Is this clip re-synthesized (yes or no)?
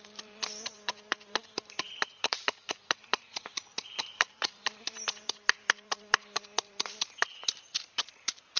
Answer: yes